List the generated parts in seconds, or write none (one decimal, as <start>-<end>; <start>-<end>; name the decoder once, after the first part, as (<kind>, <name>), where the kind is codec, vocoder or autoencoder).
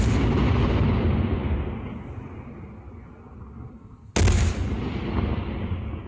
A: none